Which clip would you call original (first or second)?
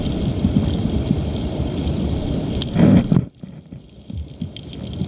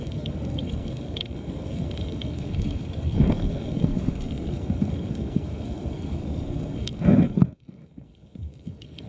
first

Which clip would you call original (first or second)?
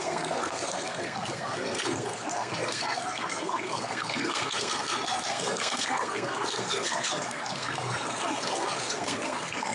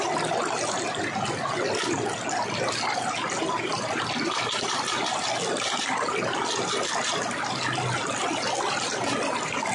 second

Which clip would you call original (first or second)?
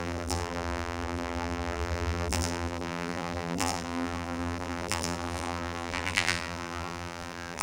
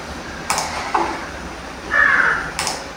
second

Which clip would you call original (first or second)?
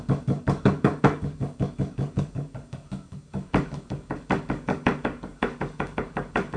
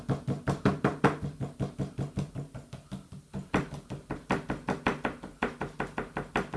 second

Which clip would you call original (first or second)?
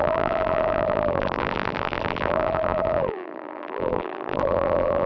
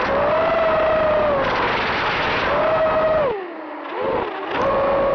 second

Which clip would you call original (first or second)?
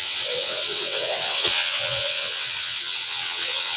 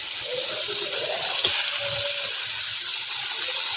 second